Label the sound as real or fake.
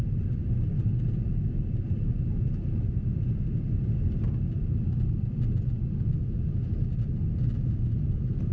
real